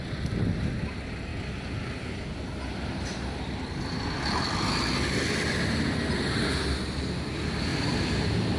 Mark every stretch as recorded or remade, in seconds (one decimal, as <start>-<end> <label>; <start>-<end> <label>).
0.0-7.7 recorded; 7.7-8.6 remade